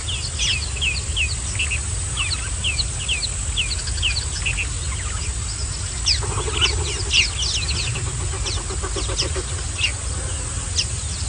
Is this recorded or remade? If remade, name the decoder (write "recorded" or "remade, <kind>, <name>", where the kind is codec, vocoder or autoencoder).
recorded